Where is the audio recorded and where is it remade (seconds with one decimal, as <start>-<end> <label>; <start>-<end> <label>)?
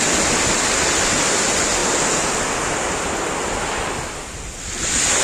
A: 0.0-5.2 recorded